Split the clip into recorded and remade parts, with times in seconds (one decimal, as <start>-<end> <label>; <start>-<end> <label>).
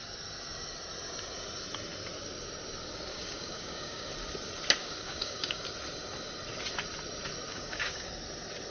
0.0-3.1 recorded; 3.1-4.1 remade; 4.1-4.8 recorded; 4.8-5.6 remade; 5.6-7.5 recorded; 7.5-8.1 remade; 8.1-8.7 recorded